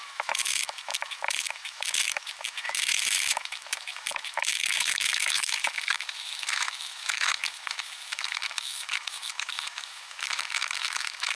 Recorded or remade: remade